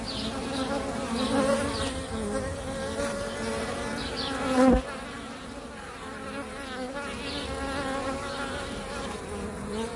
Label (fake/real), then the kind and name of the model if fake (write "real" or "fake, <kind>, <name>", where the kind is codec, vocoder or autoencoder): real